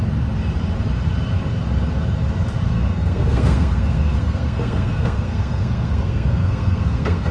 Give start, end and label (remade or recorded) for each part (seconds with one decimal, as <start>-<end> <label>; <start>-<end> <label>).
0.0-2.7 recorded; 2.7-7.3 remade